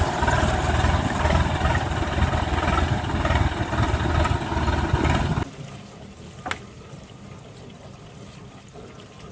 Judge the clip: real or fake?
real